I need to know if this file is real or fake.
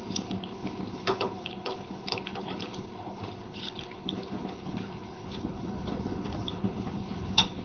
fake